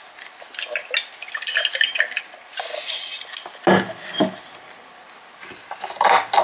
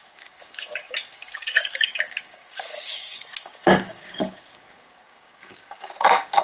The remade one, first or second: second